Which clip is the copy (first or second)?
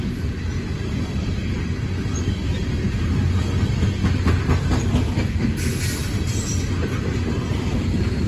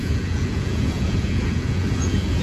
second